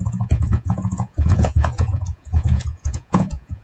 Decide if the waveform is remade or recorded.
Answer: remade